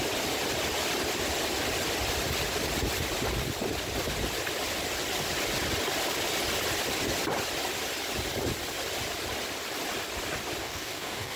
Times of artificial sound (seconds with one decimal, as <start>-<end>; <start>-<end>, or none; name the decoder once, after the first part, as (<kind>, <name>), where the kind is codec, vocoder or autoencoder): 10.6-11.4 (codec, DAC)